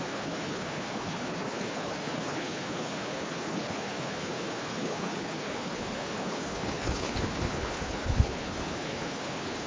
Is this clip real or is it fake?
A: fake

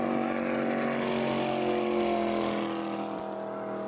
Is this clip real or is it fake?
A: real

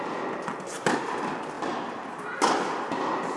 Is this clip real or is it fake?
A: real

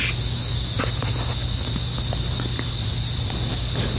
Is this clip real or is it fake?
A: real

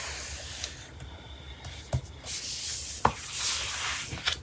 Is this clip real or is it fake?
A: real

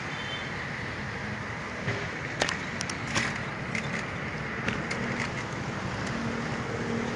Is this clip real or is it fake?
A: real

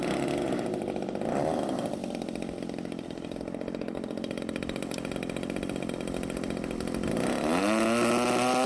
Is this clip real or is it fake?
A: real